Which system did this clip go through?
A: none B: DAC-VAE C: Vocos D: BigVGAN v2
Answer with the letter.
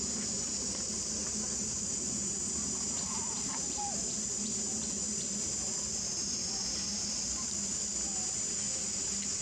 A